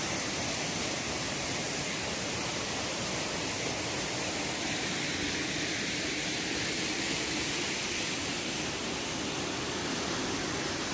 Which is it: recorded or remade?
recorded